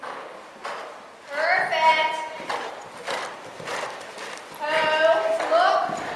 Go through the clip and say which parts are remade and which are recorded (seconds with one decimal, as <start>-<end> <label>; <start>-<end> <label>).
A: 0.0-6.2 recorded